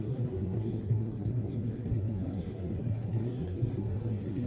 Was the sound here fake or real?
fake